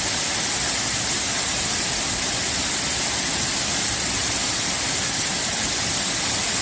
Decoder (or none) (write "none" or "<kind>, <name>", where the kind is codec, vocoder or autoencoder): none